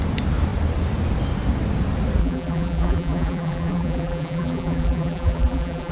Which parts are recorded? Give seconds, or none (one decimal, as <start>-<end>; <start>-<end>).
0.0-2.2